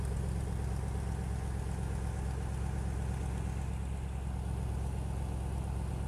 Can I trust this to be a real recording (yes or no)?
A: yes